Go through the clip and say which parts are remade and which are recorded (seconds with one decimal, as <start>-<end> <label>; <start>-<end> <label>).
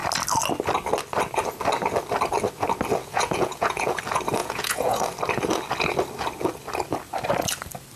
0.0-3.0 recorded; 3.0-4.0 remade; 4.0-4.4 recorded; 4.4-5.0 remade; 5.0-8.0 recorded